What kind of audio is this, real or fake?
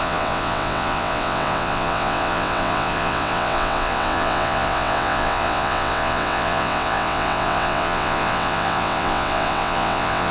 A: fake